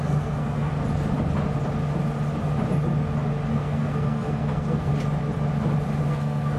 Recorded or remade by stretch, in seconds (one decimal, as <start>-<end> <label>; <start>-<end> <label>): 0.0-0.7 remade; 0.7-3.5 recorded; 3.5-4.9 remade; 4.9-6.0 recorded; 6.0-6.6 remade